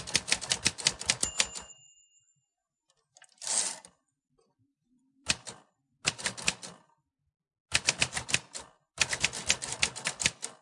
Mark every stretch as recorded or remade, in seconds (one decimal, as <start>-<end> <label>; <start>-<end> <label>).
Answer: 0.0-4.6 recorded; 4.6-5.5 remade; 5.5-10.6 recorded